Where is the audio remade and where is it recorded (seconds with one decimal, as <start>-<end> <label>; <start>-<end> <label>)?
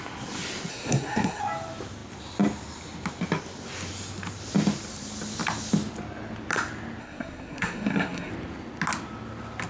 0.0-0.7 recorded; 0.7-1.4 remade; 1.4-7.0 recorded; 7.0-8.3 remade; 8.3-9.7 recorded